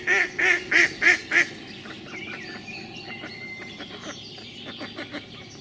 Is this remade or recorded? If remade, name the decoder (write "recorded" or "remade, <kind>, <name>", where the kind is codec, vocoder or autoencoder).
recorded